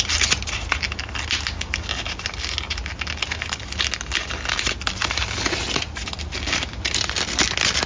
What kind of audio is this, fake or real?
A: real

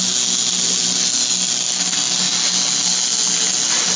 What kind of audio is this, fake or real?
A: real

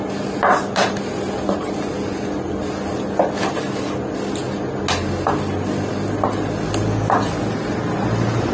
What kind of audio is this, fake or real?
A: real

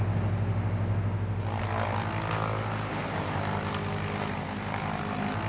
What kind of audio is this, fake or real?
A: real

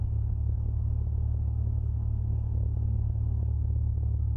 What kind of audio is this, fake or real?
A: fake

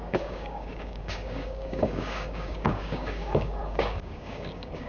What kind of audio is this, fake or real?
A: fake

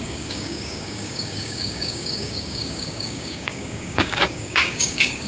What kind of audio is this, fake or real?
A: fake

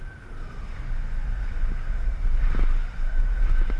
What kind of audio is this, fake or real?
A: real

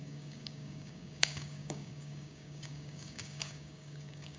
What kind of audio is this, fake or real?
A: fake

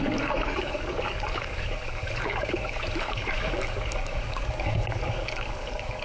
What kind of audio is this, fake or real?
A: fake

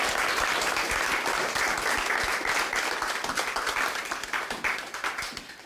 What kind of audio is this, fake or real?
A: real